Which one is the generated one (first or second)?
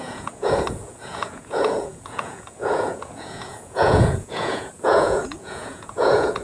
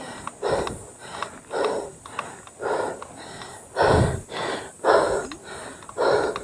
first